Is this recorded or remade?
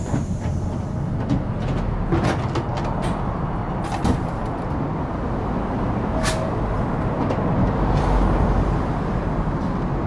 recorded